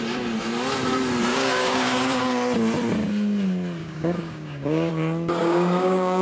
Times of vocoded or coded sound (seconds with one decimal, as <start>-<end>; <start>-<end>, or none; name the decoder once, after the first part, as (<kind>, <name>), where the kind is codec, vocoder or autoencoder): 1.3-2.2 (codec, DAC); 3.8-4.9; 5.4-6.2